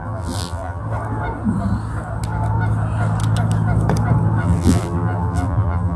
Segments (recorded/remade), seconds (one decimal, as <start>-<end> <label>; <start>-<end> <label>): 0.0-0.8 remade; 0.8-4.4 recorded; 4.4-6.0 remade